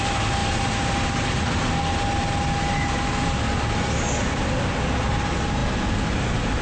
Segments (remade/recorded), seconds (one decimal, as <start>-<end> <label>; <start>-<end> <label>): 0.0-6.6 recorded

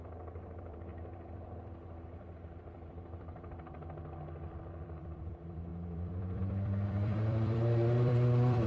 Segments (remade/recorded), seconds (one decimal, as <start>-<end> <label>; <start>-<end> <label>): 0.0-8.7 remade

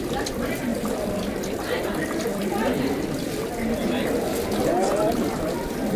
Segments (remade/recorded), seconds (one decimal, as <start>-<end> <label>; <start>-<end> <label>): 0.0-6.0 remade

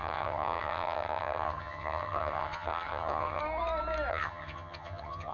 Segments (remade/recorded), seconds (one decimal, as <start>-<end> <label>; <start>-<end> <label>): 0.0-3.4 remade; 3.4-4.1 recorded; 4.1-5.3 remade

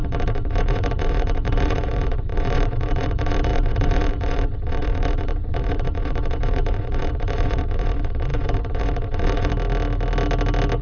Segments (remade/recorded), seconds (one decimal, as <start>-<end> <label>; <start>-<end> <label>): 0.0-9.5 remade; 9.5-10.8 recorded

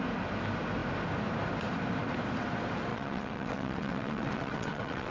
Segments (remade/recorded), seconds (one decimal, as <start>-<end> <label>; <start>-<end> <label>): 0.0-2.9 recorded; 2.9-5.1 remade

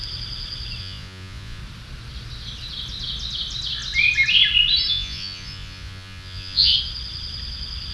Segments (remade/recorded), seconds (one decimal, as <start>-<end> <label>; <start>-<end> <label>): 0.0-0.8 recorded; 0.8-1.6 remade; 1.6-4.9 recorded; 4.9-6.7 remade; 6.7-7.9 recorded

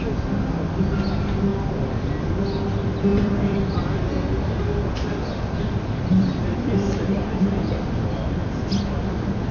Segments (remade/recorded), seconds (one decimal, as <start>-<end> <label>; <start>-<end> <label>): 0.0-1.5 recorded; 1.5-2.3 remade; 2.3-3.1 recorded; 3.1-8.2 remade; 8.2-9.5 recorded